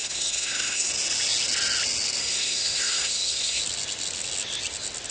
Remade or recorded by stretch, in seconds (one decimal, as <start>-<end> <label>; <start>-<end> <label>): 0.0-0.9 remade; 0.9-2.2 recorded; 2.2-3.6 remade; 3.6-5.1 recorded